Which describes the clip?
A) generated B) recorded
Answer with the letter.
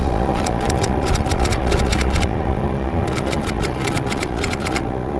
A